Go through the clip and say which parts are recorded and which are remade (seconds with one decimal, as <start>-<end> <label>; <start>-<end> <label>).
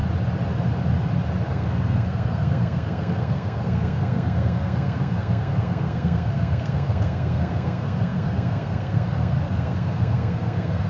0.0-1.5 recorded; 1.5-10.9 remade